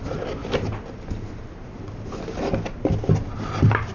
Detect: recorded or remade recorded